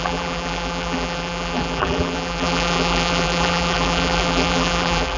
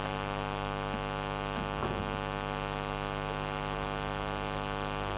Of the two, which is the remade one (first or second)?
first